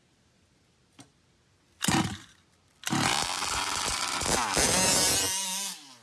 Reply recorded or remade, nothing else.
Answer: recorded